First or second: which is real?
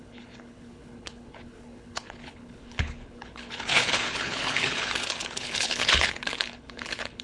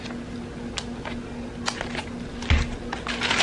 second